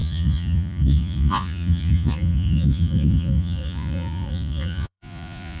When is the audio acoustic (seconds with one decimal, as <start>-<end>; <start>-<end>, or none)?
none